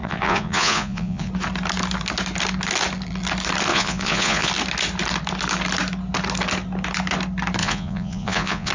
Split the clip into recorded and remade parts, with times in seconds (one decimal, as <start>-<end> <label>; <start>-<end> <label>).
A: 0.0-1.3 remade; 1.3-3.7 recorded; 3.7-4.5 remade; 4.5-7.6 recorded; 7.6-8.7 remade